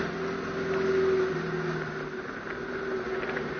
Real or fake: real